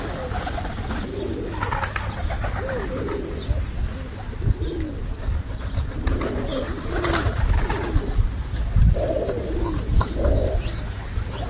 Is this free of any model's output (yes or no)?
yes